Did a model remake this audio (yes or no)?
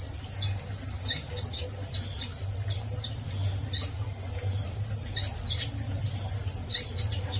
no